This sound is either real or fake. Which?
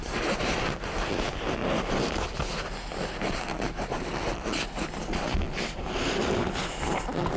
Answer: real